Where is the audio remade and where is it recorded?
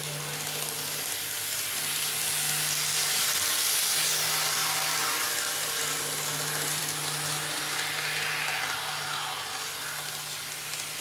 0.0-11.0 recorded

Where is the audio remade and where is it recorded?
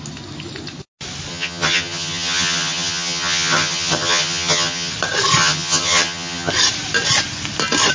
0.0-1.3 recorded; 1.3-4.9 remade; 4.9-5.4 recorded; 5.4-6.5 remade; 6.5-7.9 recorded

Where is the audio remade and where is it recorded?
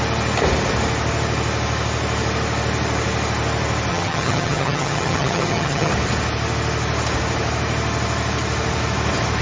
0.0-3.9 recorded; 3.9-5.9 remade; 5.9-9.4 recorded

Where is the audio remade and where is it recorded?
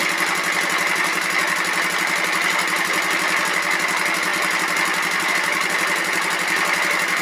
0.0-4.3 recorded; 4.3-5.3 remade; 5.3-7.2 recorded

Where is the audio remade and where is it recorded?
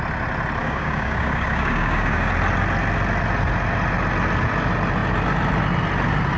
0.0-0.6 recorded; 0.6-2.3 remade; 2.3-6.4 recorded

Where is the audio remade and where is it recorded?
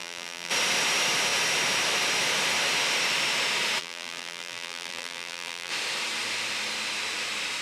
0.0-0.5 remade; 0.5-3.8 recorded; 3.8-5.7 remade; 5.7-7.6 recorded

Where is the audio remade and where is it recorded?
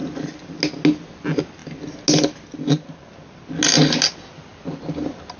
0.0-5.4 recorded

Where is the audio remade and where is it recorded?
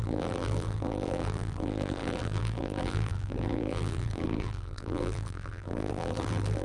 0.0-6.6 remade